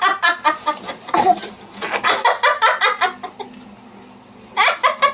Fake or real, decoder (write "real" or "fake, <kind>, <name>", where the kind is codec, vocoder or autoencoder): real